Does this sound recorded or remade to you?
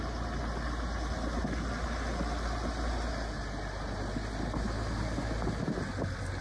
recorded